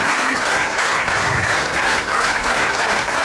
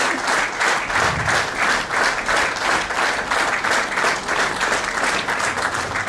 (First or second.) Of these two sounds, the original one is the second